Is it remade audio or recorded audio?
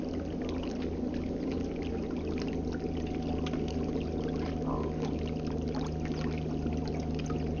recorded